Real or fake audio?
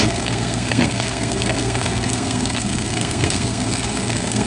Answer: fake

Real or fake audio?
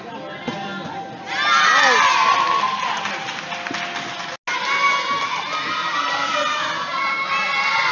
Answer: real